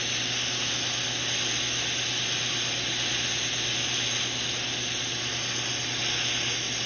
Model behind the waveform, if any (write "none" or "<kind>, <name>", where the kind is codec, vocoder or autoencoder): none